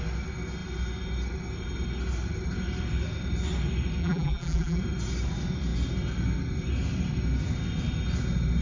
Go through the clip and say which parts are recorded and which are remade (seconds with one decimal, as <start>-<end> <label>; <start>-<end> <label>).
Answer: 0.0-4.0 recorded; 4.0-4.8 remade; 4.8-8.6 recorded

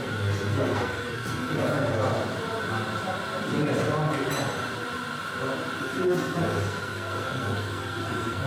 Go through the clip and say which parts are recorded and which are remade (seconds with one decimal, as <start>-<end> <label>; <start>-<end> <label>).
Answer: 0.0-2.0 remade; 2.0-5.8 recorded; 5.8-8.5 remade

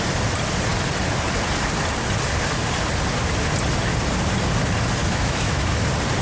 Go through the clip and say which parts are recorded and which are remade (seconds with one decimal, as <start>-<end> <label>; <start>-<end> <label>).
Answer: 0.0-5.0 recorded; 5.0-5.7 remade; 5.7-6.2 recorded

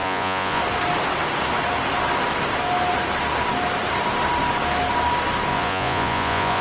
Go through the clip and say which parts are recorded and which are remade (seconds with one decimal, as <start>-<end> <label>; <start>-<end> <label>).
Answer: 0.0-0.6 remade; 0.6-5.5 recorded; 5.5-6.6 remade

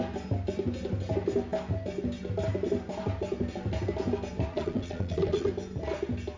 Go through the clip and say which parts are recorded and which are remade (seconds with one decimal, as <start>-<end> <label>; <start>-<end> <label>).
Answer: 0.0-4.5 recorded; 4.5-5.5 remade; 5.5-6.4 recorded